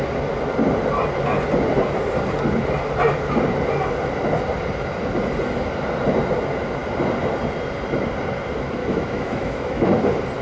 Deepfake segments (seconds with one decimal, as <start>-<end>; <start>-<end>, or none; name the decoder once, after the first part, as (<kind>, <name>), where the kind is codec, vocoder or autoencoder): 8.8-10.0 (autoencoder, DAC-VAE)